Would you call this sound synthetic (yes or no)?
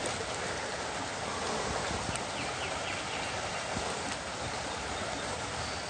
no